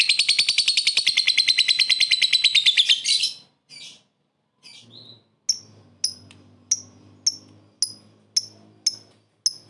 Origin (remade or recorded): recorded